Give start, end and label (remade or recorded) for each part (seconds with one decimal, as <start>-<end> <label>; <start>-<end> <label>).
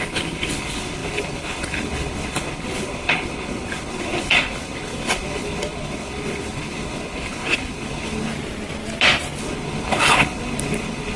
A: 0.0-8.3 remade; 8.3-9.4 recorded; 9.4-11.2 remade